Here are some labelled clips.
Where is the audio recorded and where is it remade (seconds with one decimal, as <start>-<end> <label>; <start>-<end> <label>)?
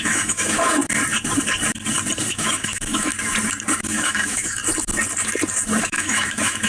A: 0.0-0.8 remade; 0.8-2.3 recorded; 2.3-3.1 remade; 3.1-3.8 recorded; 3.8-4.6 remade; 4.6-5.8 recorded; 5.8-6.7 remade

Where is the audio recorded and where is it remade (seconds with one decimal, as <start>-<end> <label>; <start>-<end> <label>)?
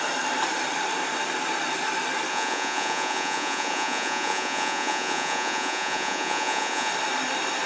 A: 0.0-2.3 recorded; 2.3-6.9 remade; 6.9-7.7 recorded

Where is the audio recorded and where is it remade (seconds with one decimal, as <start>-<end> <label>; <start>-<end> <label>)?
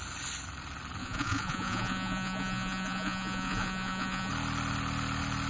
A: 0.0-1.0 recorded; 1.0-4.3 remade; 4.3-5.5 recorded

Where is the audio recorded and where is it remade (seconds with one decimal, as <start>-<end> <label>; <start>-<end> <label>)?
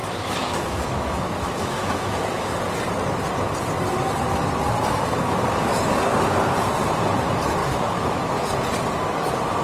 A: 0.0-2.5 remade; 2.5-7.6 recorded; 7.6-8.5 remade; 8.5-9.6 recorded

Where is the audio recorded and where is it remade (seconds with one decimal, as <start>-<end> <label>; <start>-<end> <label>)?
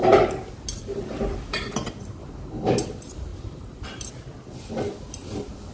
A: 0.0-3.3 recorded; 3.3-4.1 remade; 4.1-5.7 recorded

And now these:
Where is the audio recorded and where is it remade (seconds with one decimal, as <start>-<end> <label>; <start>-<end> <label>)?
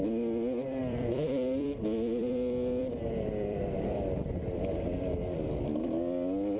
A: 0.0-0.8 recorded; 0.8-4.3 remade; 4.3-6.6 recorded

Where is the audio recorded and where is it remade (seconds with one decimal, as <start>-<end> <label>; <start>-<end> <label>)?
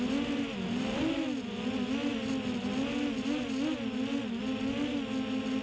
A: 0.0-5.6 recorded